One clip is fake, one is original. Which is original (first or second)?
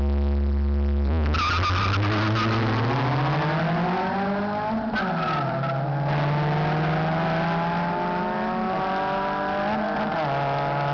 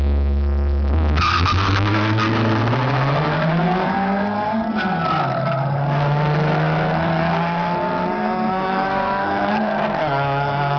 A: first